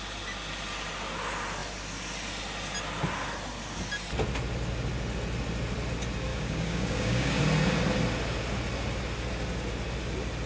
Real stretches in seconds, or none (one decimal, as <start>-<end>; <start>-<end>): 0.0-6.3; 7.4-10.5